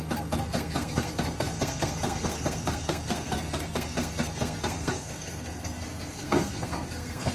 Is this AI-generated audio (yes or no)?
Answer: yes